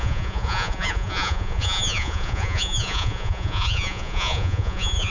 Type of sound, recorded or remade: remade